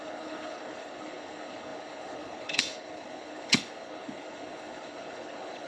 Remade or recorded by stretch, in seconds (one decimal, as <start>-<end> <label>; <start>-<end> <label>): 0.0-5.7 remade